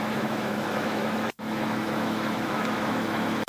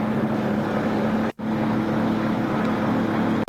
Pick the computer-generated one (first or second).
first